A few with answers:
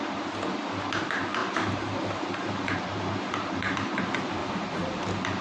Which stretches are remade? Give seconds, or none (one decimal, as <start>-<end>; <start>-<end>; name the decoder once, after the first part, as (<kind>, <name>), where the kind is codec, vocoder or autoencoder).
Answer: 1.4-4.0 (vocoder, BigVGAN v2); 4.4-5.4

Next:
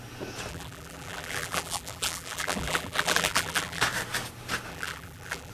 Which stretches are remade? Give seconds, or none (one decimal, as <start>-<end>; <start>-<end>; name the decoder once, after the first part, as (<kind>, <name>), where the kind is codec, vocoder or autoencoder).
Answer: 0.5-3.8 (vocoder, BigVGAN v2); 4.7-5.5

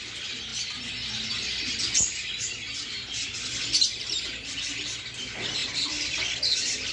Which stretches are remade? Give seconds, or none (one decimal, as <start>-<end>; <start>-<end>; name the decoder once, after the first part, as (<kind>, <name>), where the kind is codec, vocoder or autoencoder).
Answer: 5.6-6.4 (vocoder, BigVGAN v2)